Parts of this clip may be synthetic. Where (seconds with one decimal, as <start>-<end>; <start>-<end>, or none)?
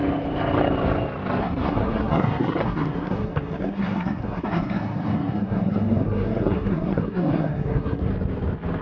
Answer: 1.4-8.1